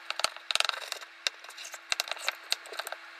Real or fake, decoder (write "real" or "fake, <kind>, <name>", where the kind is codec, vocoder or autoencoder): real